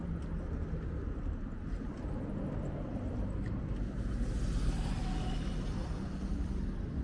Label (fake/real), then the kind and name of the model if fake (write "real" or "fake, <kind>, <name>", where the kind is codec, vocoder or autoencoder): real